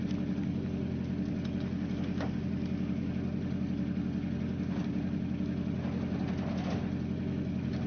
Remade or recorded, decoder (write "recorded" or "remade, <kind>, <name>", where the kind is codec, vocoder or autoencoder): recorded